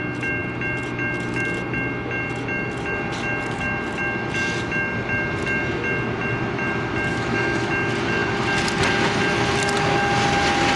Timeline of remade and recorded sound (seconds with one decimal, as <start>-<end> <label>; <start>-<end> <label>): 0.0-7.1 recorded; 7.1-7.7 remade; 7.7-10.8 recorded